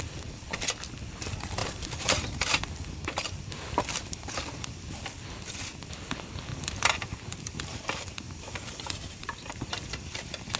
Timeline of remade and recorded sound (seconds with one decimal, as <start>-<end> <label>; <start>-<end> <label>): 0.0-1.6 recorded; 1.6-2.6 remade; 2.6-6.5 recorded; 6.5-10.6 remade